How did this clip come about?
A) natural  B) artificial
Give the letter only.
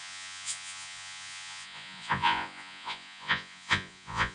B